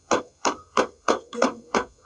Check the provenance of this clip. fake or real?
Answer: fake